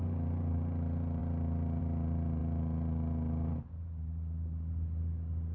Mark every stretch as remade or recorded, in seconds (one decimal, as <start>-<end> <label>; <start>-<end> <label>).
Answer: 0.0-5.5 recorded